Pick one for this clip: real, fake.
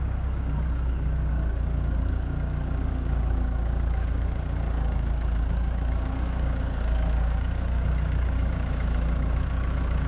fake